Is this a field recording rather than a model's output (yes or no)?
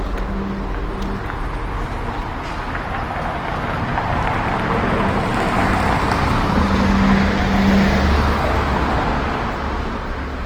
yes